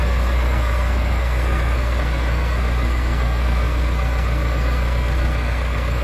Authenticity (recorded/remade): remade